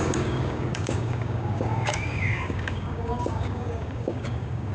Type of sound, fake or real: fake